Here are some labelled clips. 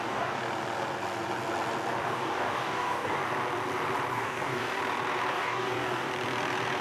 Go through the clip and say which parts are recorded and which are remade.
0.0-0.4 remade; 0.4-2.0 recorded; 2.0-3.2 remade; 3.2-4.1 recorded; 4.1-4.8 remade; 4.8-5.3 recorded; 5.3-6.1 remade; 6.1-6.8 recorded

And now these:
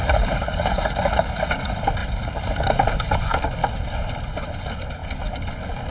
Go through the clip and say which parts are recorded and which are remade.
0.0-3.6 remade; 3.6-4.6 recorded; 4.6-5.9 remade

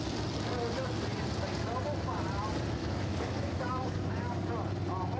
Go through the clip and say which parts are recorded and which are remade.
0.0-2.8 recorded; 2.8-4.5 remade; 4.5-5.2 recorded